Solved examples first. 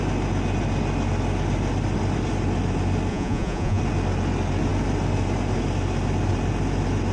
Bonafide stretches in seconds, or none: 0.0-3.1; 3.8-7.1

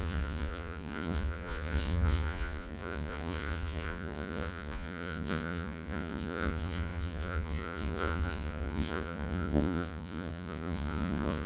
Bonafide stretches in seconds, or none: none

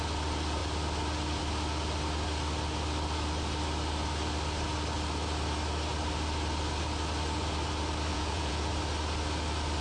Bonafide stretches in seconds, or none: 0.0-8.1; 8.7-9.8

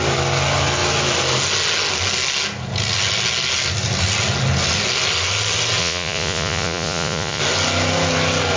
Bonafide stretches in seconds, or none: 0.0-5.8; 7.4-8.6